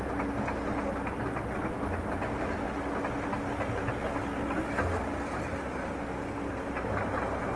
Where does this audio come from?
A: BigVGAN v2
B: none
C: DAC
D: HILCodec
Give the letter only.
B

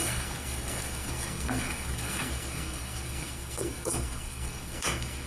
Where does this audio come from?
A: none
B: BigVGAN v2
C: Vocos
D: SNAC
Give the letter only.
D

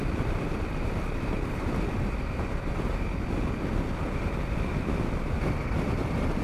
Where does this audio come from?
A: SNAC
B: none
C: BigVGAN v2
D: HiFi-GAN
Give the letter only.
B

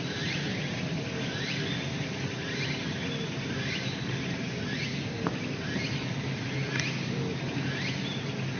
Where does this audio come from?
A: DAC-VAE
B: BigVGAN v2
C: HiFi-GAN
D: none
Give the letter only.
D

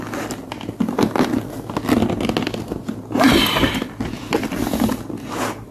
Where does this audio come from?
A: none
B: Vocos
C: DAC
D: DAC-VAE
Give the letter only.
A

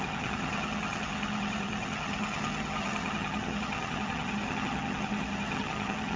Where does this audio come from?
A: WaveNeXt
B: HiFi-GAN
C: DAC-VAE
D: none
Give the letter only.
B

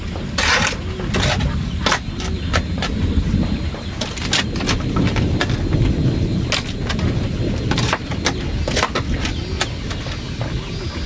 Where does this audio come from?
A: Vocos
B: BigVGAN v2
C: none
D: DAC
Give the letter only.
C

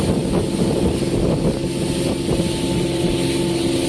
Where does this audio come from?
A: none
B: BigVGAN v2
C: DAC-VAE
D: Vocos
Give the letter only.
A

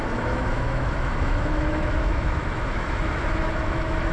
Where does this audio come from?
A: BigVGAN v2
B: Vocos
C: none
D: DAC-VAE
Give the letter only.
D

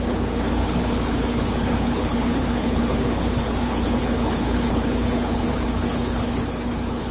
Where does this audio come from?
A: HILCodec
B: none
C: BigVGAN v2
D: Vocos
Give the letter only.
A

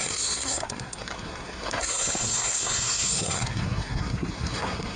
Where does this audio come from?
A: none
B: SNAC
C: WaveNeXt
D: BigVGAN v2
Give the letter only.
B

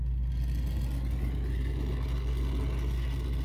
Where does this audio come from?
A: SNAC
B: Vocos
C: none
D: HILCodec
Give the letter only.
C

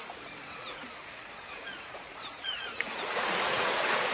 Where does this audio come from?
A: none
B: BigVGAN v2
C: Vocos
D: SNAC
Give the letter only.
C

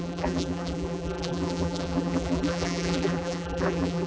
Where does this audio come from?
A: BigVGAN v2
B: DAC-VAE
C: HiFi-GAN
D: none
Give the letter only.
A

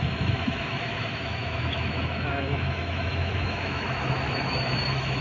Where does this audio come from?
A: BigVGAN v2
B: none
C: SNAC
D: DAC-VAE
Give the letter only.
D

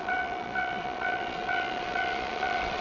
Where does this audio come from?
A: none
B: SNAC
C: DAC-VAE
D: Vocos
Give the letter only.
D